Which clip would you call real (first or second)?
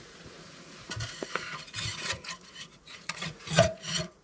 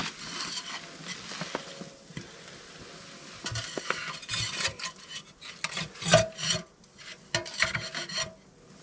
second